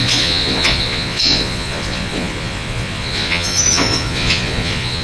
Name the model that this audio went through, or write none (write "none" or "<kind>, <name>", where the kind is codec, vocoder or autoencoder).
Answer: vocoder, Vocos